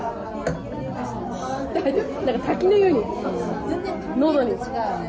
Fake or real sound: real